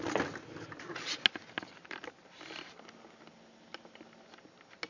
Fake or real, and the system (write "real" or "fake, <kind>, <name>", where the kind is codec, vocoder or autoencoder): real